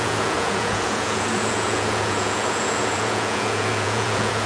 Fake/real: fake